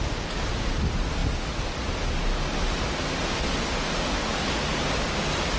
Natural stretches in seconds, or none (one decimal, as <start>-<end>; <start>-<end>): 0.0-5.6